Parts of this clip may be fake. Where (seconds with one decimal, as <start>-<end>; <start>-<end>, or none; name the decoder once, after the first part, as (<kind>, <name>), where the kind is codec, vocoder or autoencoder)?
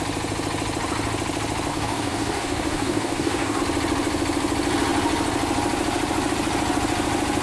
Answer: 1.7-3.6 (codec, DAC)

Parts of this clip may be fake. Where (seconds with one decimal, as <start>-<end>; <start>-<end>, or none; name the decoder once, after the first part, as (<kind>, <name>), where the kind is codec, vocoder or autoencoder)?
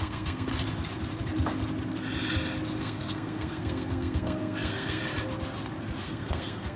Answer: 0.0-0.5 (codec, SNAC); 2.8-5.0; 6.0-6.8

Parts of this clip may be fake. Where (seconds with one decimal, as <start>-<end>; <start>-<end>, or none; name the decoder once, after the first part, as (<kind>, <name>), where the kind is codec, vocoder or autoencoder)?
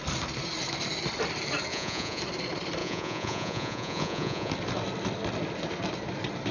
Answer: 1.7-2.2 (vocoder, Vocos); 2.8-4.5